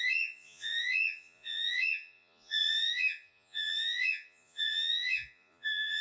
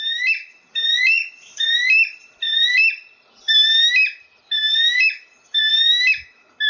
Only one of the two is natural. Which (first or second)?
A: second